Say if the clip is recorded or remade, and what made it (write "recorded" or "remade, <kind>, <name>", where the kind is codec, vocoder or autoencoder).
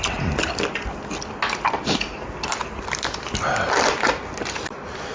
recorded